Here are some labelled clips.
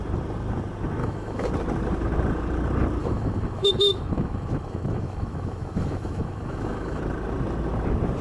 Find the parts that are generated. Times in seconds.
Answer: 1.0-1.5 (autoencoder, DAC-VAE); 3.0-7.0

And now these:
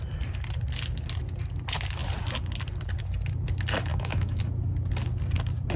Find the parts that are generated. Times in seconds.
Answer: 3.9-4.4 (autoencoder, DAC-VAE)